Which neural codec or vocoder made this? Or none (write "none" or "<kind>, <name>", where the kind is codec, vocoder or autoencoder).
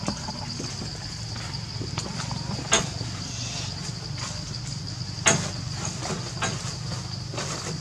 none